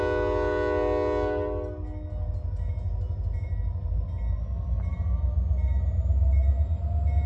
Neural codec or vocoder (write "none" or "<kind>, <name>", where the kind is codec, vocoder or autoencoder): none